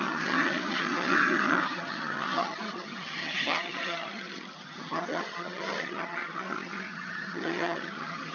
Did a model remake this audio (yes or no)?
yes